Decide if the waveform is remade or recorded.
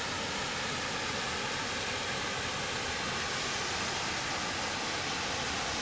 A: recorded